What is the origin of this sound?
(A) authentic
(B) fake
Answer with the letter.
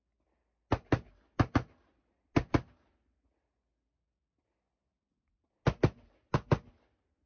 A